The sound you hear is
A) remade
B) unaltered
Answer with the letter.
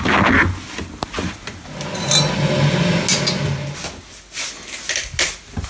B